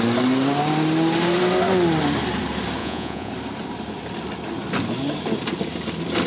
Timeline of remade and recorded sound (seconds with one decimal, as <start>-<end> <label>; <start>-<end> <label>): 0.0-2.8 recorded; 2.8-3.3 remade; 3.3-6.3 recorded